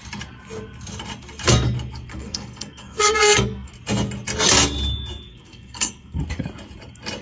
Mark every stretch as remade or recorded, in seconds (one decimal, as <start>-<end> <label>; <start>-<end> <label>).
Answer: 0.0-2.1 recorded; 2.1-3.7 remade; 3.7-5.3 recorded; 5.3-6.2 remade; 6.2-7.2 recorded